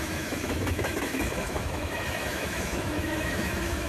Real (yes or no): no